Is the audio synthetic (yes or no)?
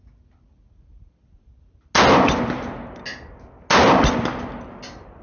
no